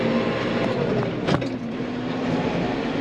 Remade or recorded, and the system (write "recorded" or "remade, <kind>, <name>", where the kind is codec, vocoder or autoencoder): recorded